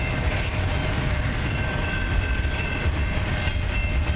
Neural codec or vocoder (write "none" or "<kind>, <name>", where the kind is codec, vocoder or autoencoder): none